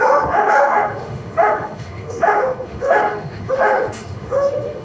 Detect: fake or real fake